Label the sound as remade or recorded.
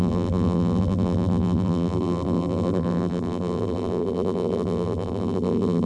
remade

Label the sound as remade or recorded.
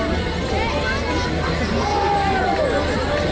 recorded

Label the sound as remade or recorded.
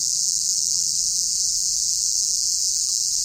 remade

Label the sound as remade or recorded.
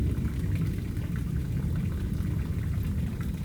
remade